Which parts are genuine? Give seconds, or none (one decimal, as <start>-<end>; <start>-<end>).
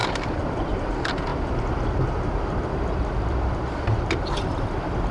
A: 0.9-5.1